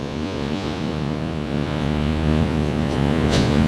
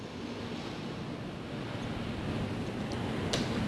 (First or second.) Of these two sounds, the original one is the second